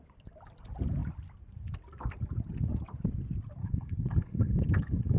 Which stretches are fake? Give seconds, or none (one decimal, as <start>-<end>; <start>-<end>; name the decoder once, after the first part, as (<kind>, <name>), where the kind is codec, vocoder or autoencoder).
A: 3.6-5.2 (codec, HILCodec)